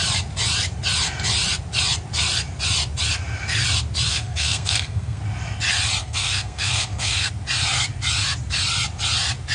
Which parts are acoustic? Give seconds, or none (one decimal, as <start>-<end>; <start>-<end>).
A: 0.0-4.1; 5.2-6.0; 7.3-9.5